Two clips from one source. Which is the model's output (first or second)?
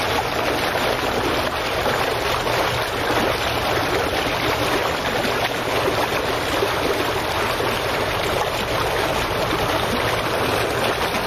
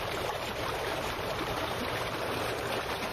second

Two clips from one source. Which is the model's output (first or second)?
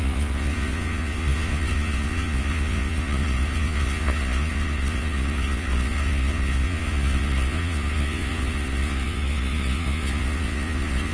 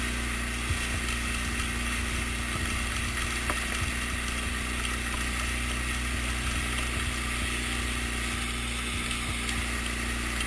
first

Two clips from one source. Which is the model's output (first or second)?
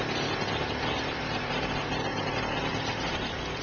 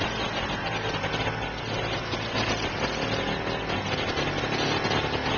first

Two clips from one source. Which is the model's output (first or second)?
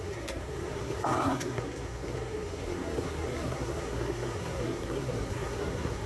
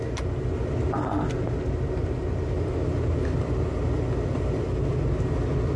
first